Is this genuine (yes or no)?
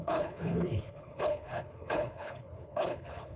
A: no